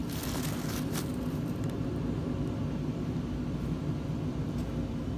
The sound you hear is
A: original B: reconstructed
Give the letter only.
A